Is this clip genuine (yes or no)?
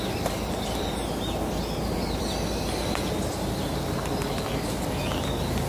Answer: yes